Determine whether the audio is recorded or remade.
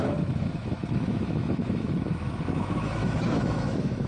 remade